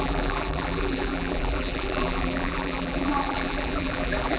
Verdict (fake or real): fake